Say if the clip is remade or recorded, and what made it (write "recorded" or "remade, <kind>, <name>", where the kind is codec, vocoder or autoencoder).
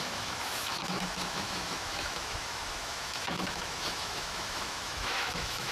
remade, autoencoder, DAC-VAE